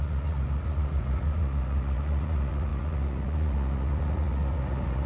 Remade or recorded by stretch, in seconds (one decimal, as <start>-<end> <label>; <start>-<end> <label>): 0.0-5.1 remade